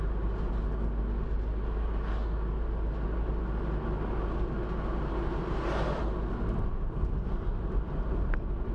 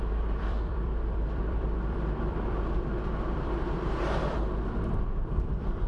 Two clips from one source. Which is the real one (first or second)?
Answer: first